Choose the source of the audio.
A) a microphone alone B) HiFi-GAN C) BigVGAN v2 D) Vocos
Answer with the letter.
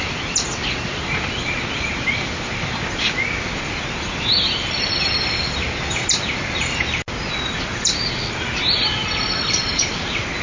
A